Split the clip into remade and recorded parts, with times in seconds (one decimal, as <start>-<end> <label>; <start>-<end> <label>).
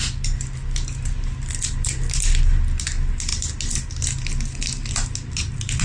0.0-5.8 recorded